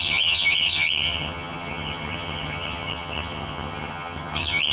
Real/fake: fake